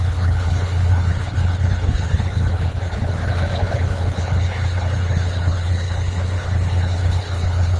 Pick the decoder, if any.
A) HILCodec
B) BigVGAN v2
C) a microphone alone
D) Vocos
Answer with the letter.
A